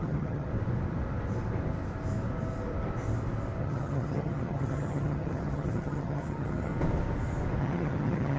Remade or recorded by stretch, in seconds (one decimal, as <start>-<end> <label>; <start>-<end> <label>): 0.0-0.5 remade; 0.5-3.6 recorded; 3.6-6.7 remade; 6.7-7.6 recorded; 7.6-8.4 remade